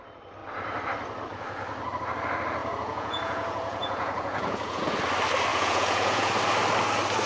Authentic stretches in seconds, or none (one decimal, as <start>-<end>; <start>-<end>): 0.0-2.6; 5.0-5.5; 6.3-7.3